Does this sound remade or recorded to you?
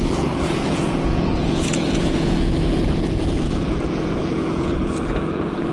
remade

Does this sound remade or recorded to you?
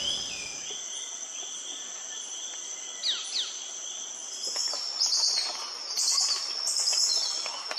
recorded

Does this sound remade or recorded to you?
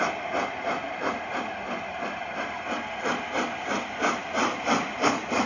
recorded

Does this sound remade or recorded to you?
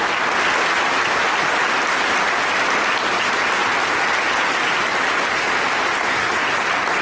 recorded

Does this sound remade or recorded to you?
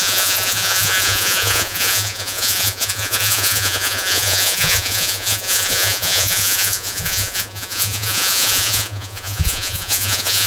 remade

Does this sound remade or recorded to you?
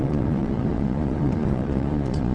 remade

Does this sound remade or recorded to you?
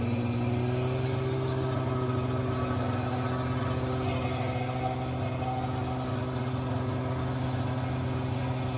recorded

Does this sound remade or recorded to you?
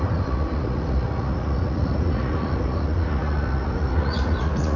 remade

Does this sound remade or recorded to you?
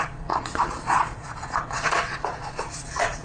remade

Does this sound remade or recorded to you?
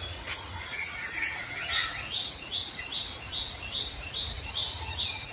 remade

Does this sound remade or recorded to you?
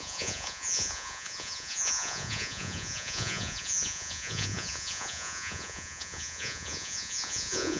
remade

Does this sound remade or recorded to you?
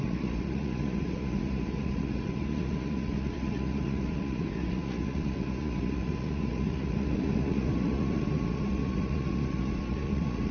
remade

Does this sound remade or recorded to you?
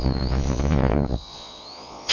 remade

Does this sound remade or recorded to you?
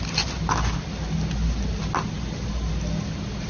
recorded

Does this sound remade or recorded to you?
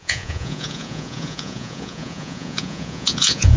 remade